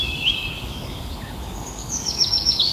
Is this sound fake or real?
fake